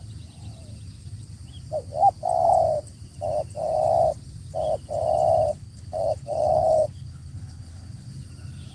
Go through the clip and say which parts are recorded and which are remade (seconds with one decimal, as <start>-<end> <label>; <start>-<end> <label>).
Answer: 0.0-5.5 recorded; 5.5-8.1 remade; 8.1-8.7 recorded

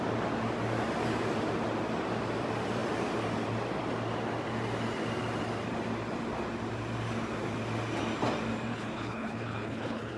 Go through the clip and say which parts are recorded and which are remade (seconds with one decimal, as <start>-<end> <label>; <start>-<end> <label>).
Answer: 0.0-8.7 recorded; 8.7-10.2 remade